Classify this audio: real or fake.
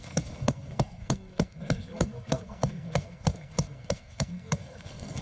fake